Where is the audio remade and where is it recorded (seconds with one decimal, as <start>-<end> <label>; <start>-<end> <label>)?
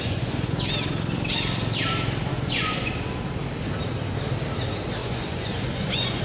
0.0-0.6 remade; 0.6-2.3 recorded; 2.3-2.9 remade; 2.9-5.0 recorded; 5.0-6.2 remade